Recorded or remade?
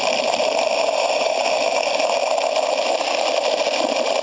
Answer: recorded